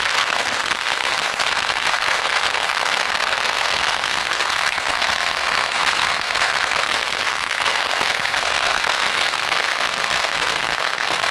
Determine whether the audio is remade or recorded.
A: remade